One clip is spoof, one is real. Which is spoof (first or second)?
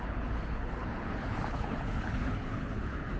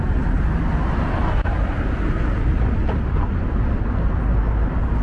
first